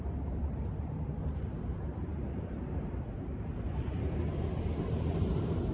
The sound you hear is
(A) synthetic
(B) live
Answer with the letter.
A